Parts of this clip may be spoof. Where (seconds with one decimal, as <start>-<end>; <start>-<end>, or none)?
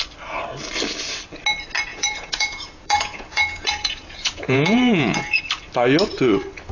1.9-5.4